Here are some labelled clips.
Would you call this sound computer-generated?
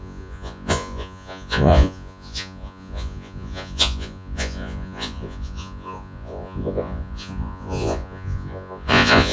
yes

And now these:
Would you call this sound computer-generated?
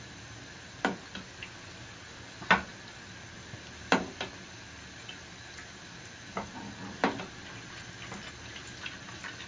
no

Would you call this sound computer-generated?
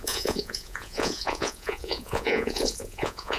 yes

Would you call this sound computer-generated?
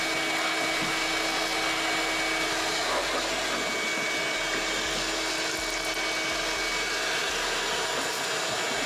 no